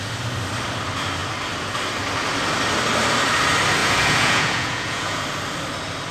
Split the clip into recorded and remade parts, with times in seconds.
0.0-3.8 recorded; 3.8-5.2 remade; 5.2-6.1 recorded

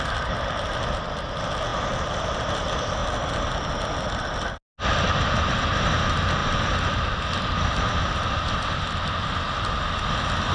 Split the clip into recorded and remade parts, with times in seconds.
0.0-10.5 recorded

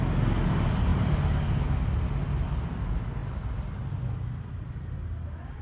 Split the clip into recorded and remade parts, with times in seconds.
0.0-0.9 recorded; 0.9-2.5 remade; 2.5-5.6 recorded

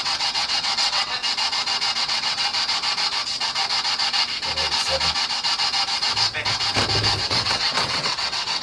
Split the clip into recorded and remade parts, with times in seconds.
0.0-1.2 remade; 1.2-2.0 recorded; 2.0-2.5 remade; 2.5-7.2 recorded; 7.2-8.6 remade

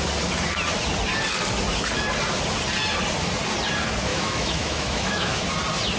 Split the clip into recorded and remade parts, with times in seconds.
0.0-4.1 recorded; 4.1-5.4 remade; 5.4-6.0 recorded

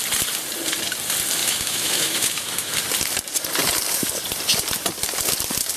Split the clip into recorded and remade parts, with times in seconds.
0.0-1.4 recorded; 1.4-2.7 remade; 2.7-5.8 recorded